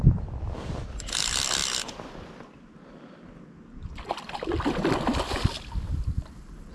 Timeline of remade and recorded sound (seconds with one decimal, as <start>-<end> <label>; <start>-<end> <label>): 0.0-1.6 remade; 1.6-5.6 recorded; 5.6-6.7 remade